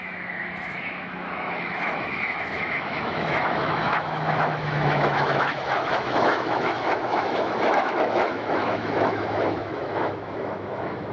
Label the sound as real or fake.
fake